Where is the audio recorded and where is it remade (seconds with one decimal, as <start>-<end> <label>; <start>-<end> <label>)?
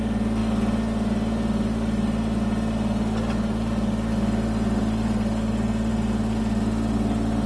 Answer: 0.0-7.5 recorded